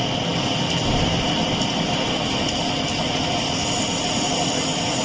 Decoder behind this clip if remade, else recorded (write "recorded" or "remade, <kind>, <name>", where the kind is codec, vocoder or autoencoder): recorded